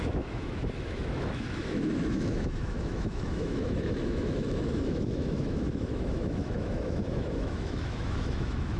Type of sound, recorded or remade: remade